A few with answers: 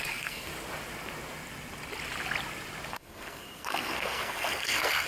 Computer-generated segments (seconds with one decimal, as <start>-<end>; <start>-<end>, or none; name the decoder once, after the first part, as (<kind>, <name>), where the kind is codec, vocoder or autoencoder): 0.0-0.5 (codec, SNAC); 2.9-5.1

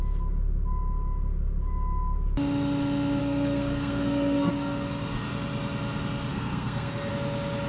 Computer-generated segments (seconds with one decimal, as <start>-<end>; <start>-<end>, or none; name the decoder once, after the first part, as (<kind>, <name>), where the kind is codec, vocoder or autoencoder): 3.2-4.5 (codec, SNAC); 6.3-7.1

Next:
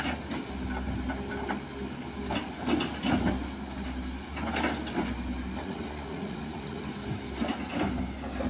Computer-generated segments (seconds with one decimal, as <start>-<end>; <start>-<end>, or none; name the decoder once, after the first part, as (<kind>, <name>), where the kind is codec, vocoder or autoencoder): 5.6-6.8 (vocoder, Vocos)